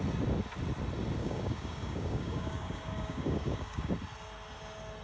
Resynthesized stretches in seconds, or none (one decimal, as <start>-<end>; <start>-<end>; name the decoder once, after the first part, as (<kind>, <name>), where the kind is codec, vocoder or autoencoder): 1.2-3.9 (codec, DAC)